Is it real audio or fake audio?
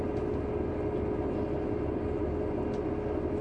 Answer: real